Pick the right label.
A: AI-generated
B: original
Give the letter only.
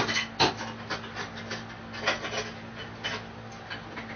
B